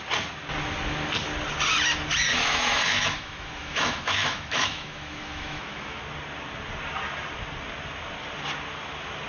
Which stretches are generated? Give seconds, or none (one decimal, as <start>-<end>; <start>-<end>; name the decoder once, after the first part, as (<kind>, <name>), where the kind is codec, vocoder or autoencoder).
2.3-6.0 (autoencoder, DAC-VAE)

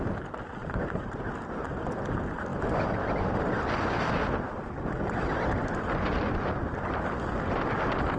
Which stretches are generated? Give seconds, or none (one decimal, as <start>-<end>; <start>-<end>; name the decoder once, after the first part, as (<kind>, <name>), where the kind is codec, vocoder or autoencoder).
0.6-1.3 (vocoder, BigVGAN v2)

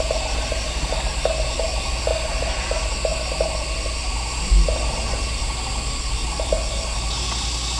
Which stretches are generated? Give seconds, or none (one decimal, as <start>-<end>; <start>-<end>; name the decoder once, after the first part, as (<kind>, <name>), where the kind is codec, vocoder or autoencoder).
none

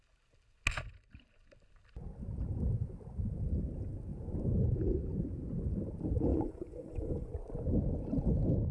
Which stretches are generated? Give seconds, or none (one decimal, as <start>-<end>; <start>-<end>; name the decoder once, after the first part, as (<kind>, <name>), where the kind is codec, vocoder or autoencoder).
6.3-7.3 (vocoder, Vocos)

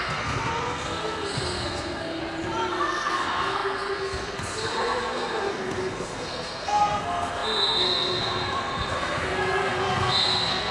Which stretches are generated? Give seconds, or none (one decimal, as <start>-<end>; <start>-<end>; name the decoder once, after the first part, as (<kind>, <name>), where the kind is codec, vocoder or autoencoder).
0.0-2.2 (codec, SNAC); 2.7-10.7

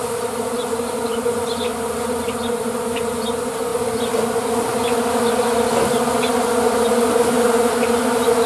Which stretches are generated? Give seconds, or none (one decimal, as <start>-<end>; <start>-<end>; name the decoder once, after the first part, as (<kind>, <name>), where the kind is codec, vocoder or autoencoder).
none